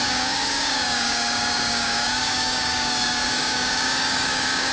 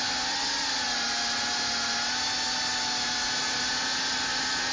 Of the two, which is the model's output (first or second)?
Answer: first